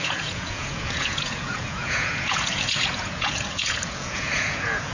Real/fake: fake